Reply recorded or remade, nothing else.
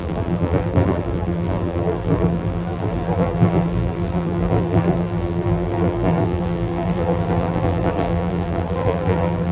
remade